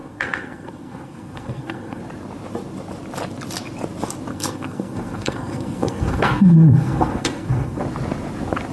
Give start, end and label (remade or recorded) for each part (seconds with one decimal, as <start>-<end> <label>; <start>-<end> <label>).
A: 0.0-2.0 remade; 2.0-4.3 recorded; 4.3-7.8 remade; 7.8-8.7 recorded

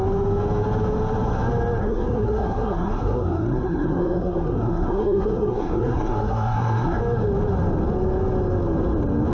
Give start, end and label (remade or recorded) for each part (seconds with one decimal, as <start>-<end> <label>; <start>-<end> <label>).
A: 0.0-1.8 recorded; 1.8-7.0 remade; 7.0-9.3 recorded

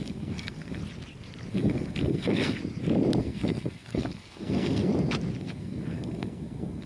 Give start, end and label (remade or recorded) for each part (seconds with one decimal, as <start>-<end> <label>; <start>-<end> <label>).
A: 0.0-0.8 remade; 0.8-1.5 recorded; 1.5-2.6 remade; 2.6-3.2 recorded; 3.2-4.9 remade; 4.9-5.4 recorded; 5.4-6.9 remade

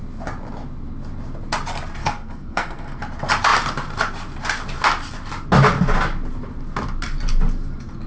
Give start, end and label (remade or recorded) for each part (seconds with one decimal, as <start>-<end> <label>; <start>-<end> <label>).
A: 0.0-2.0 recorded; 2.0-3.0 remade; 3.0-8.1 recorded

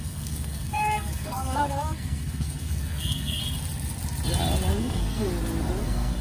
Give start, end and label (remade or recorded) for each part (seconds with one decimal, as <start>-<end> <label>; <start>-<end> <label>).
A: 0.0-3.4 remade; 3.4-4.8 recorded; 4.8-5.3 remade; 5.3-5.8 recorded; 5.8-6.2 remade

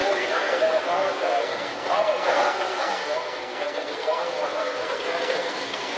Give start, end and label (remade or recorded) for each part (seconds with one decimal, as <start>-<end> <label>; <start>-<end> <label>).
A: 0.0-6.0 remade

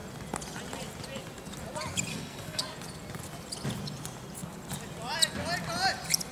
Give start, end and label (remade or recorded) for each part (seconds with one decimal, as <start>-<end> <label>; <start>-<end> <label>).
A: 0.0-2.1 recorded; 2.1-2.6 remade; 2.6-6.3 recorded

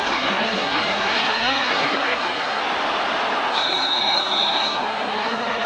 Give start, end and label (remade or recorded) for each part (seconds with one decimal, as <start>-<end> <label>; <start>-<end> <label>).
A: 0.0-2.6 remade; 2.6-3.5 recorded; 3.5-5.7 remade